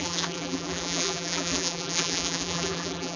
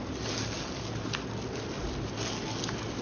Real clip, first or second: second